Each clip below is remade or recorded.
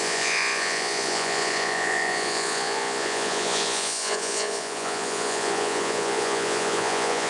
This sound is remade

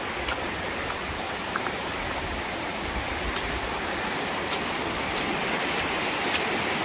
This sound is recorded